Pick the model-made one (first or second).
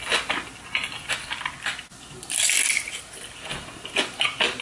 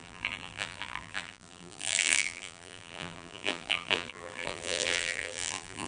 second